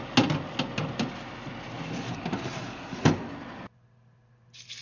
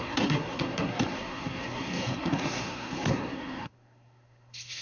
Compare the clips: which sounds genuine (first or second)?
first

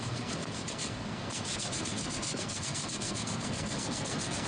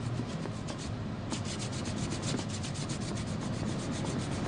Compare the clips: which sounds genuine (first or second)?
second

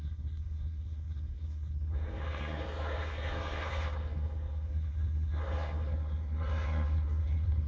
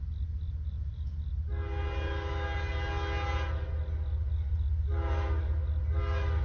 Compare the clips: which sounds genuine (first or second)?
second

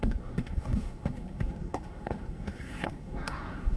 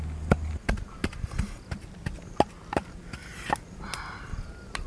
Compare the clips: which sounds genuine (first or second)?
second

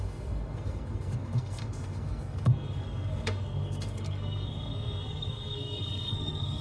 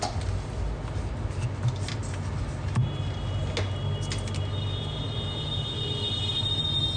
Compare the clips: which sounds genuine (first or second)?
second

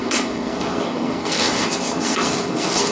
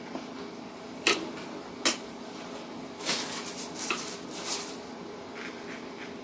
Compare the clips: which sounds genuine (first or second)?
second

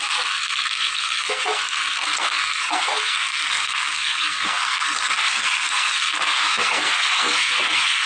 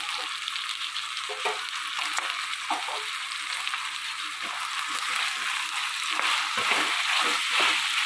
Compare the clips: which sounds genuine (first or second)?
second